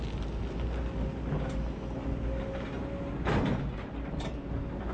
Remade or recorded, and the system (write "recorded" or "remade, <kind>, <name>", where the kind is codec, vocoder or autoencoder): recorded